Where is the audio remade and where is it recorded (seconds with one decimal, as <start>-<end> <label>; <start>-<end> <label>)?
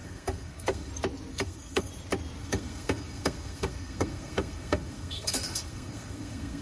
0.0-0.9 remade; 0.9-1.3 recorded; 1.3-1.9 remade; 1.9-2.4 recorded; 2.4-6.6 remade